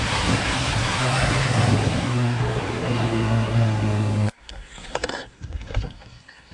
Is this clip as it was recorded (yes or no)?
no